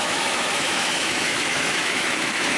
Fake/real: fake